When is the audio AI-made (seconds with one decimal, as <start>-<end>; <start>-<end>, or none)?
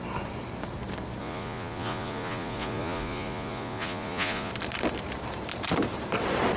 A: 1.2-4.5